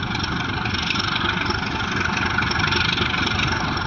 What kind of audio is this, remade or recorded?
recorded